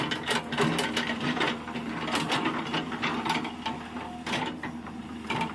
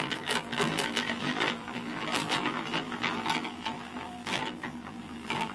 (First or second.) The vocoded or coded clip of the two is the second